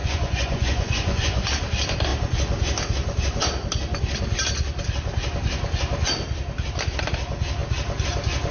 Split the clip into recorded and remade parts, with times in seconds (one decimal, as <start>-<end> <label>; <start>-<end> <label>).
0.0-1.4 remade; 1.4-8.5 recorded